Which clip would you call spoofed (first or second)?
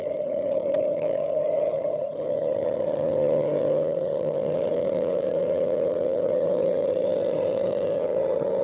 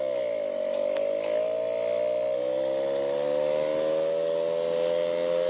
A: first